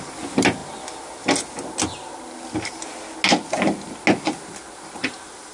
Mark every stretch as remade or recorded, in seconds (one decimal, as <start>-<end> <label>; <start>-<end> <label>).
0.0-5.5 recorded